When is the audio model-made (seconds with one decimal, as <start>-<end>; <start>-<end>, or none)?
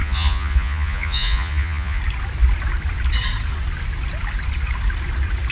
0.0-2.0